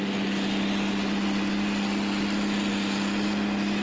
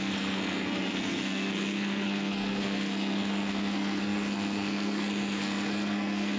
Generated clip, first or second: second